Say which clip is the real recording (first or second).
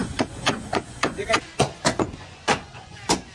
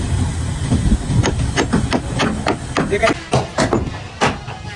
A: second